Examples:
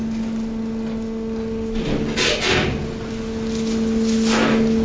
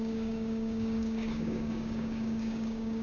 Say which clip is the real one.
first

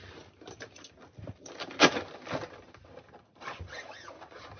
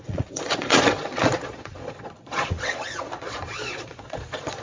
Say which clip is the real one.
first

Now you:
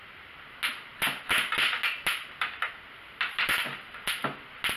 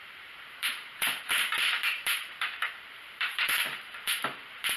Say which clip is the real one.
first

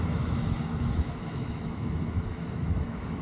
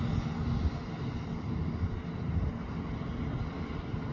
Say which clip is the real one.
second